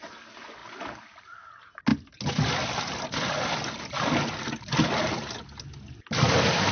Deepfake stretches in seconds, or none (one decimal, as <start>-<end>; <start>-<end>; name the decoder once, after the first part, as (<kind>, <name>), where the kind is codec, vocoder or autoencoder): 0.6-1.5 (vocoder, BigVGAN v2)